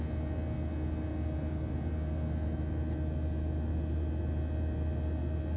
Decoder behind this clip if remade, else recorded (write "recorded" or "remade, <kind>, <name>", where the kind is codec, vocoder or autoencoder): recorded